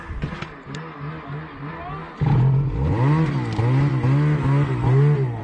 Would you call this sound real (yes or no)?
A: yes